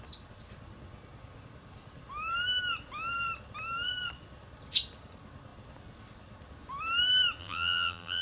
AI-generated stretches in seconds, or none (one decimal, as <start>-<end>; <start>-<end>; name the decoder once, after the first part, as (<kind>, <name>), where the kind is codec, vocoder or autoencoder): 7.4-8.2 (vocoder, BigVGAN v2)